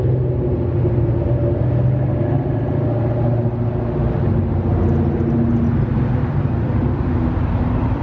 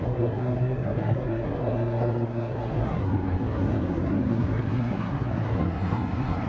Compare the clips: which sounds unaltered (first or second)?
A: first